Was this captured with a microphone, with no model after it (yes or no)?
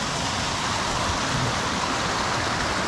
yes